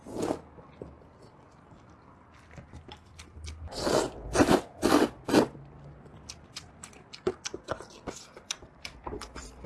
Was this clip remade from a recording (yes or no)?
no